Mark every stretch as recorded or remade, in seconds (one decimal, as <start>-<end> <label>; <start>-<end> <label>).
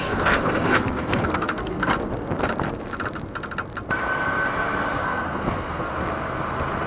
0.0-1.9 remade; 1.9-4.9 recorded; 4.9-5.9 remade; 5.9-6.9 recorded